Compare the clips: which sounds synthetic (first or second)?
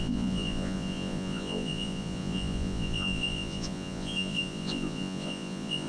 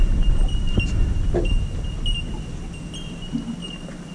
first